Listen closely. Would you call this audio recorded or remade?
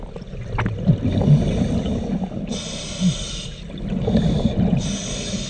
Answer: recorded